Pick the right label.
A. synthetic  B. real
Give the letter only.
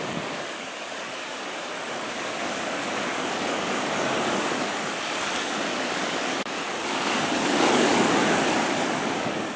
A